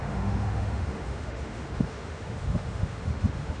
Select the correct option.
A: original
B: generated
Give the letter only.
B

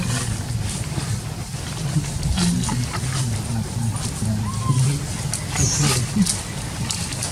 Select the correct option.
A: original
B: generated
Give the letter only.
A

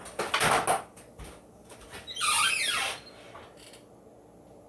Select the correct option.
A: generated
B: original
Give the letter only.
B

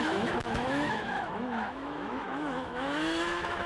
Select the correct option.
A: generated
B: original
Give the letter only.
A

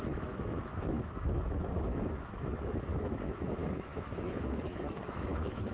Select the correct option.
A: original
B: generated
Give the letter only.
B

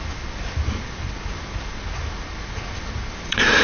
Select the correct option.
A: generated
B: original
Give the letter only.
B